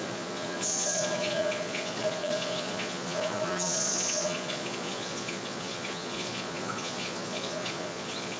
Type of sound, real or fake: fake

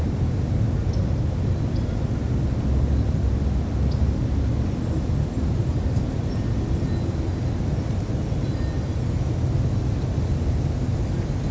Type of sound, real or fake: real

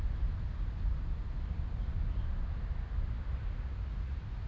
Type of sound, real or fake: real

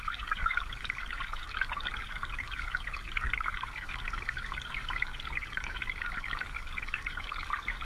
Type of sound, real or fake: fake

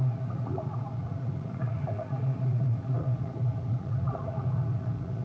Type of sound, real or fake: fake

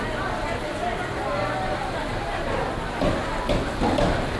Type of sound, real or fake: real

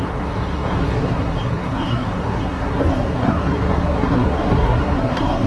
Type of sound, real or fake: fake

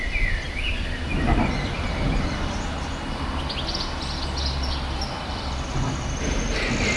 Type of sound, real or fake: real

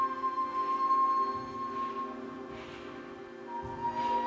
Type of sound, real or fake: real